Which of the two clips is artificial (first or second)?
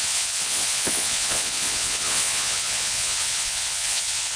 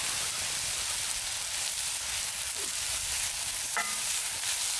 first